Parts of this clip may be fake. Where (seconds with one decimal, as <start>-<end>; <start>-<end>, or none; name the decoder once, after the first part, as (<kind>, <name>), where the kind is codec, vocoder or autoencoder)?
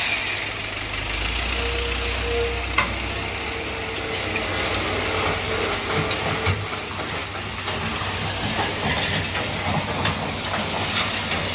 none